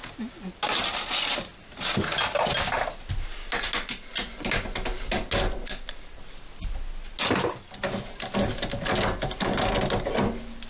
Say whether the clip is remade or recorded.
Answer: recorded